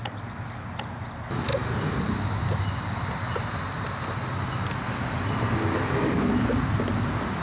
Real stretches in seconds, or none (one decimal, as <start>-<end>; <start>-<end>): 0.0-7.4